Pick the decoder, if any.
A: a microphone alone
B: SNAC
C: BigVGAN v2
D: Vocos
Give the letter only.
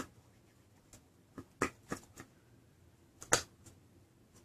A